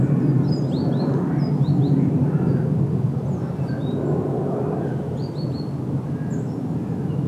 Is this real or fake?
real